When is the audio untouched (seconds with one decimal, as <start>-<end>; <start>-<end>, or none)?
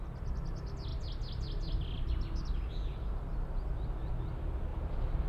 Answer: 0.0-4.7